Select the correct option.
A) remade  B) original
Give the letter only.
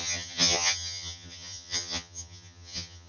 A